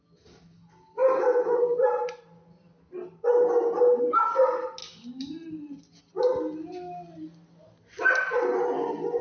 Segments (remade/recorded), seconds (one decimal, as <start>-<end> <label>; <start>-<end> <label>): 0.0-9.2 recorded